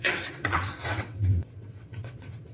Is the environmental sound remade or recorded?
remade